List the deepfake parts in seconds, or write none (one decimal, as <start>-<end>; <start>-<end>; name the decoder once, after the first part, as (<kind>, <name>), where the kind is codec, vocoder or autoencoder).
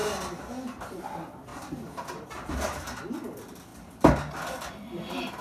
0.0-1.0 (vocoder, BigVGAN v2); 1.5-3.0